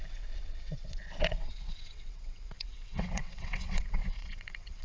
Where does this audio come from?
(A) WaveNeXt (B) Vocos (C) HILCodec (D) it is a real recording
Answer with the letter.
A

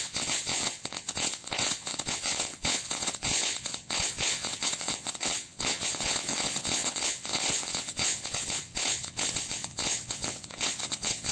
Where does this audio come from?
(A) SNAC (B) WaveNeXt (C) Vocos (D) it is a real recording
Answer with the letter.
B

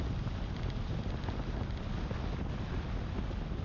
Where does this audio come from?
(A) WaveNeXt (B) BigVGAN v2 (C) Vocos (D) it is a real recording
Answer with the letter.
D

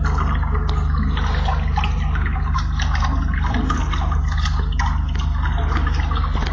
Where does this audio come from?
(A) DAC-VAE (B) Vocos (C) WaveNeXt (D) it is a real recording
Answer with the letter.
D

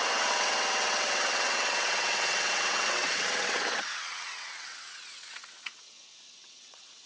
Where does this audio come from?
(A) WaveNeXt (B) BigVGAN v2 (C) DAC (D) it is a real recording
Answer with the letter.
A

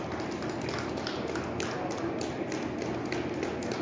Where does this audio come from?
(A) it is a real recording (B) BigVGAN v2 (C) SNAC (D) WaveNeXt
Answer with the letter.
A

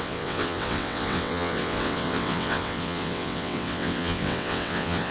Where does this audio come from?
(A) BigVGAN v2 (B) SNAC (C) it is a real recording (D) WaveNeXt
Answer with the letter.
D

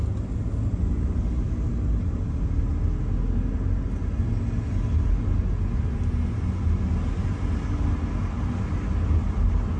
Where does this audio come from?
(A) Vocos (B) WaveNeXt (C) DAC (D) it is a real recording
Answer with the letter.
D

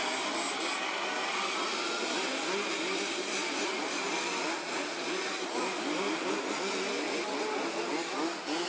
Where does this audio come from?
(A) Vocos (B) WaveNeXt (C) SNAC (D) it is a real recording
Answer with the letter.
D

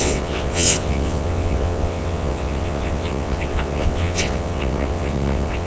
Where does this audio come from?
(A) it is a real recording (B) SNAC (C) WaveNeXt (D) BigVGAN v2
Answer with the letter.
C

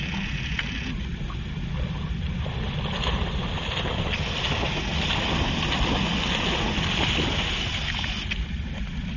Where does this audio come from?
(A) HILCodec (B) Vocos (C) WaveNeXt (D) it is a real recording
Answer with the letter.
D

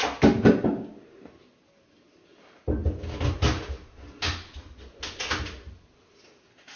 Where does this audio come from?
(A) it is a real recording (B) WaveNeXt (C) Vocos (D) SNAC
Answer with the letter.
A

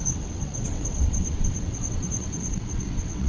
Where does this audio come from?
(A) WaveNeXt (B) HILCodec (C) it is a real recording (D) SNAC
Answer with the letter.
A